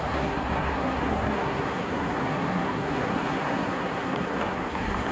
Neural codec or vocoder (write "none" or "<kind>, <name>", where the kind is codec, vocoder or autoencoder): codec, SNAC